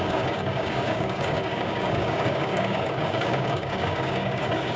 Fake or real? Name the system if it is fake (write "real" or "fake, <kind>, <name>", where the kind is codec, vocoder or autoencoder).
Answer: fake, codec, DAC